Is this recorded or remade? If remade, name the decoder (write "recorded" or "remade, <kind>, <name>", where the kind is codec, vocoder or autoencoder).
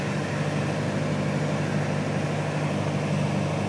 recorded